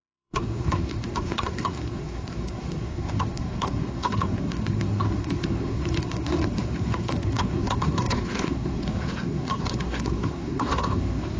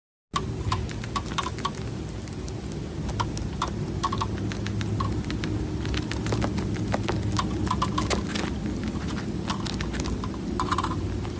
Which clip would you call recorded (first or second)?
second